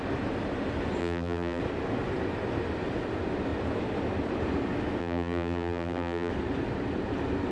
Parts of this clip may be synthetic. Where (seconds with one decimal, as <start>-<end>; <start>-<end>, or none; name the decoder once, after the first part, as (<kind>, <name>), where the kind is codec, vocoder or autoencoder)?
1.0-1.6 (vocoder, BigVGAN v2); 5.0-6.3